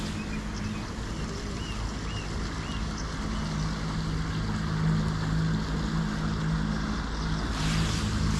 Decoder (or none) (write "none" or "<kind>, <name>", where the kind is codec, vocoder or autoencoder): none